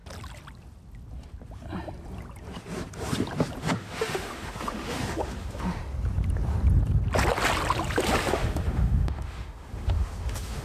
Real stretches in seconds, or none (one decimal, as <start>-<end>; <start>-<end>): 0.0-3.6; 5.8-8.3